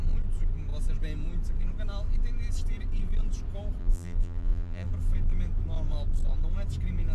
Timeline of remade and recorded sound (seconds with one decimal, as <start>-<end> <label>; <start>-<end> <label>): 0.0-3.8 recorded; 3.8-4.9 remade; 4.9-7.1 recorded